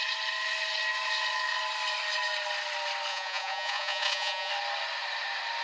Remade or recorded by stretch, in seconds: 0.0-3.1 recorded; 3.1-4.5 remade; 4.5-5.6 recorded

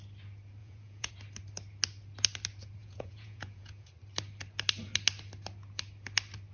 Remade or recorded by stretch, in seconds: 0.0-0.6 recorded; 0.6-1.1 remade; 1.1-2.8 recorded; 2.8-3.9 remade; 3.9-6.5 recorded

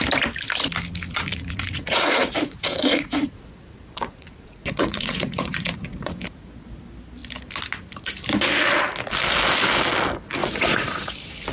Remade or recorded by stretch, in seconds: 0.0-1.3 recorded; 1.3-6.2 remade; 6.2-10.4 recorded; 10.4-11.1 remade; 11.1-11.5 recorded

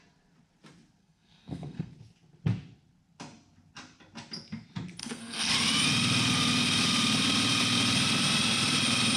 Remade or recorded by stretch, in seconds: 0.0-1.0 recorded; 1.0-1.9 remade; 1.9-5.0 recorded; 5.0-5.5 remade; 5.5-9.2 recorded